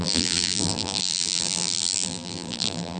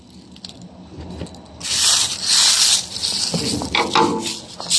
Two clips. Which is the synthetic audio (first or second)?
first